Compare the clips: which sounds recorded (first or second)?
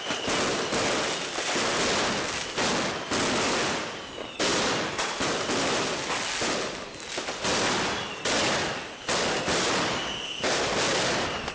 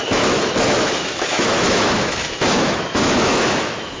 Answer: first